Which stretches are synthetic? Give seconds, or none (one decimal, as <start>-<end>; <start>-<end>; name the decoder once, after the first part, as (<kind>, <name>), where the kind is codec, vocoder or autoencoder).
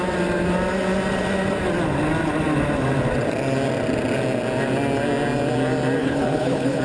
6.0-6.8 (codec, HILCodec)